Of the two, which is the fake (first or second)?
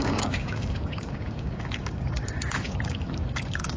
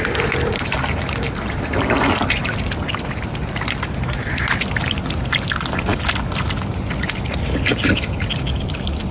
first